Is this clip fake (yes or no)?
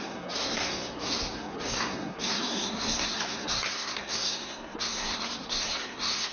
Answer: yes